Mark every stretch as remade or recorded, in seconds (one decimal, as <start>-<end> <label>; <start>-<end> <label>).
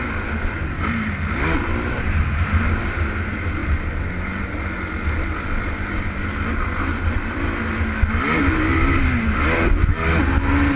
0.0-10.8 recorded